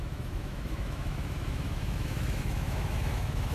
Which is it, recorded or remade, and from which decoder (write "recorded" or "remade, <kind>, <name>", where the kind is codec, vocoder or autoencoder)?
remade, autoencoder, DAC-VAE